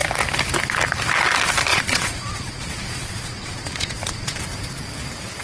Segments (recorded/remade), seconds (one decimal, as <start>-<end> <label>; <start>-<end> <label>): 0.0-1.7 recorded; 1.7-4.4 remade; 4.4-5.4 recorded